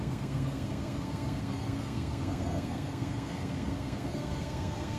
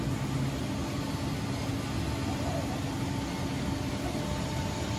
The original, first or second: second